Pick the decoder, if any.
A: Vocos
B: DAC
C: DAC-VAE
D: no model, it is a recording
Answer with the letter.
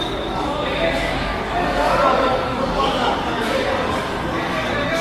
B